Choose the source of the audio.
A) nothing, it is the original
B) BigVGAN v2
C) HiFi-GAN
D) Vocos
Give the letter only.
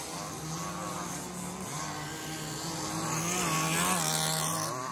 A